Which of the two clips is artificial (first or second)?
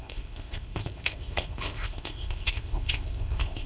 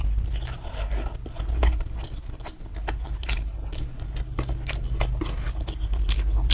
first